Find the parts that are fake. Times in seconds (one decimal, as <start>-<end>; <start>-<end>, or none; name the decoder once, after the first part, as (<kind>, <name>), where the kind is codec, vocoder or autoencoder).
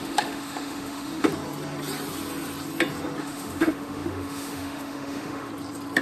0.0-1.3 (autoencoder, DAC-VAE); 3.2-5.5